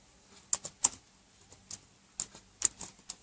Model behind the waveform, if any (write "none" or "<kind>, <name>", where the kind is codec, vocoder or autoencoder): none